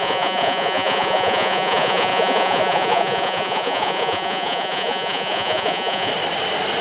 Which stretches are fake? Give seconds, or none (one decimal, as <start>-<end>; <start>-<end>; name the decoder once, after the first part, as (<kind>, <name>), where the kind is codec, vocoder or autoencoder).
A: 0.0-6.1 (vocoder, Vocos)